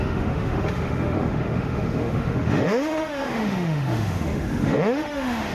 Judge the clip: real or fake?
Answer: fake